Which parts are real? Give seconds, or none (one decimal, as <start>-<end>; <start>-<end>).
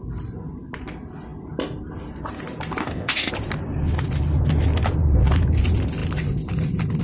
0.0-2.8; 3.3-7.0